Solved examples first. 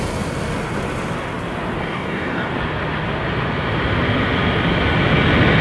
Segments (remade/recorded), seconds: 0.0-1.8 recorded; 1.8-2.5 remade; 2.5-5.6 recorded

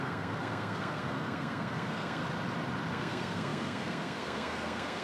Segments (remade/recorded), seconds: 0.0-2.2 remade; 2.2-2.9 recorded; 2.9-5.0 remade

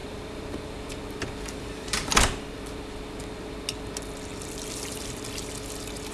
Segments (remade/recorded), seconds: 0.0-3.5 remade; 3.5-4.3 recorded; 4.3-5.5 remade; 5.5-6.1 recorded

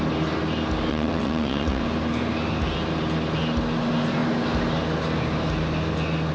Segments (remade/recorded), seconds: 0.0-0.9 recorded; 0.9-1.8 remade; 1.8-6.3 recorded

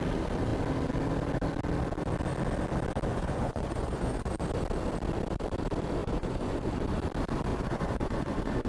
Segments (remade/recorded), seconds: 0.0-3.1 recorded; 3.1-4.4 remade; 4.4-6.0 recorded; 6.0-6.7 remade; 6.7-7.5 recorded; 7.5-8.7 remade

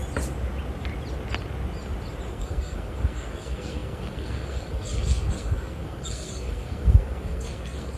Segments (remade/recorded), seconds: 0.0-2.3 recorded; 2.3-8.0 remade

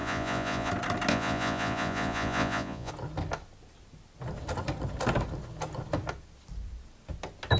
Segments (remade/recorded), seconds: 0.0-0.7 remade; 0.7-1.1 recorded; 1.1-2.9 remade; 2.9-7.6 recorded

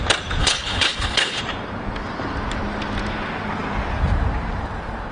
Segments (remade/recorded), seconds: 0.0-0.4 recorded; 0.4-1.4 remade; 1.4-5.1 recorded